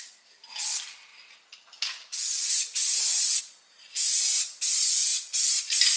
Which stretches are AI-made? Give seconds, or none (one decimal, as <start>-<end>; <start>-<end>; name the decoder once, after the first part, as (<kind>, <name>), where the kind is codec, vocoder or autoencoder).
none